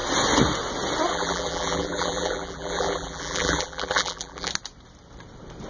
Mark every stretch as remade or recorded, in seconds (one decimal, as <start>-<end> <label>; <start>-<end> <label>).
0.0-1.1 recorded; 1.1-4.5 remade; 4.5-5.7 recorded